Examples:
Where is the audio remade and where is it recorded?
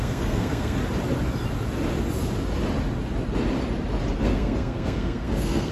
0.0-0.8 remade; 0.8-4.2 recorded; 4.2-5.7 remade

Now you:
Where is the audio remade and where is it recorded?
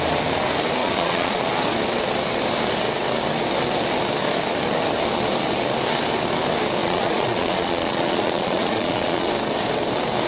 0.0-0.8 recorded; 0.8-1.4 remade; 1.4-6.8 recorded; 6.8-9.3 remade; 9.3-10.3 recorded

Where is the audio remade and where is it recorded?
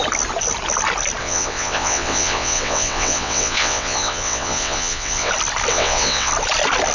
0.0-1.2 recorded; 1.2-5.3 remade; 5.3-5.7 recorded; 5.7-6.3 remade; 6.3-6.9 recorded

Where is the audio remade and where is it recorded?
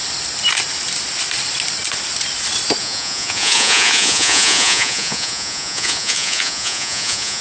0.0-2.8 recorded; 2.8-7.4 remade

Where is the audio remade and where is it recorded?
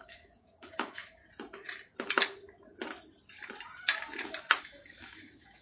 0.0-1.2 remade; 1.2-4.6 recorded; 4.6-5.6 remade